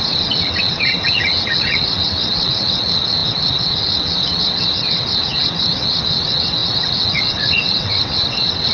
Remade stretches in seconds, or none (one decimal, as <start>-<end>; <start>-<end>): 0.0-8.7